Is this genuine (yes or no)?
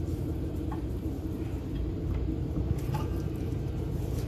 no